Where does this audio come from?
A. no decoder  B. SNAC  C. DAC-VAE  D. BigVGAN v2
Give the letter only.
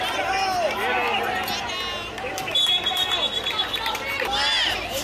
A